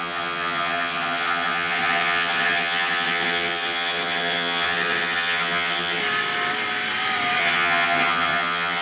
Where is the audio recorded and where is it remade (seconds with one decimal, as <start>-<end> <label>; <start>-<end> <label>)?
0.0-6.0 remade; 6.0-7.4 recorded; 7.4-8.8 remade